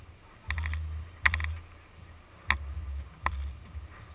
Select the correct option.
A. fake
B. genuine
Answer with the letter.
B